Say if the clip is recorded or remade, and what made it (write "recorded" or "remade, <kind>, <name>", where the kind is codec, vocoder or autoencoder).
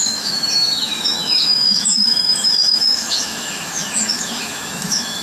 remade, autoencoder, DAC-VAE